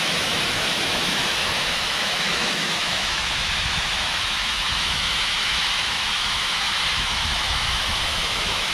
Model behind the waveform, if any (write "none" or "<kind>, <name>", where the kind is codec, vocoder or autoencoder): autoencoder, DAC-VAE